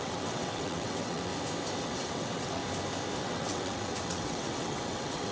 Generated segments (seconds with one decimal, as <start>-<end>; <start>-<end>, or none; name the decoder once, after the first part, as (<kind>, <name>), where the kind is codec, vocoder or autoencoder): 0.0-1.3 (vocoder, WaveNeXt); 1.8-2.6; 3.2-5.3